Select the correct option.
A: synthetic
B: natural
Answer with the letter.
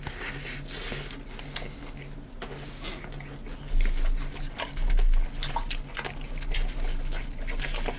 B